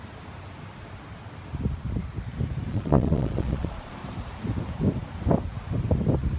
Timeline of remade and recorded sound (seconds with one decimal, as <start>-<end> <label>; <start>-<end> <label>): 0.0-2.7 recorded; 2.7-3.9 remade; 3.9-6.4 recorded